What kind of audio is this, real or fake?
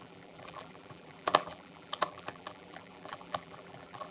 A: fake